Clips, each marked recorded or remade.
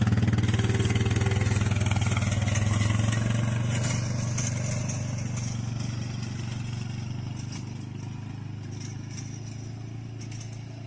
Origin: recorded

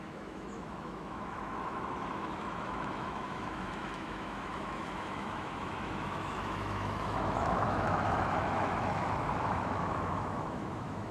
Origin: remade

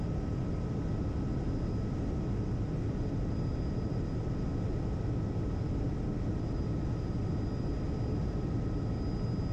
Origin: recorded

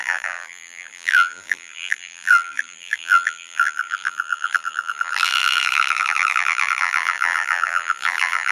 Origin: remade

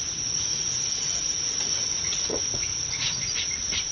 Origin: remade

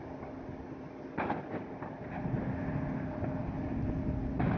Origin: recorded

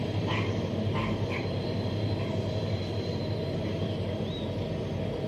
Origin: recorded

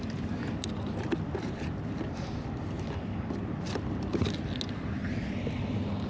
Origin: recorded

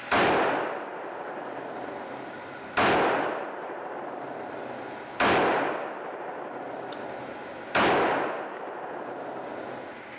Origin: recorded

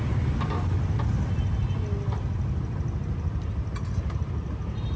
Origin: recorded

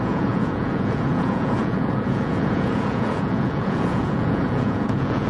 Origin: remade